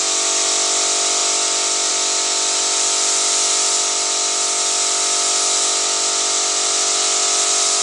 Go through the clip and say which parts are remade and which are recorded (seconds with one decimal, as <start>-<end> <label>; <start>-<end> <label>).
0.0-7.8 recorded